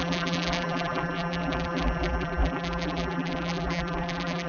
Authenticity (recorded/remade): remade